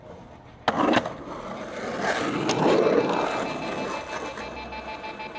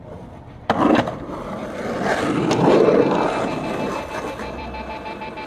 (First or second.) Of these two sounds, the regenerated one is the second